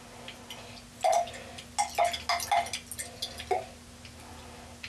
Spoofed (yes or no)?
no